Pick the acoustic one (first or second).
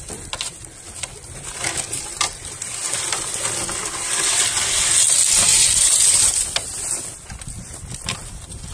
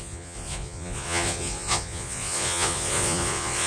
first